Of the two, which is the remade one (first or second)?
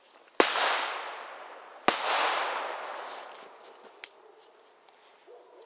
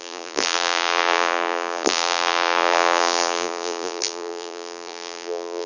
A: second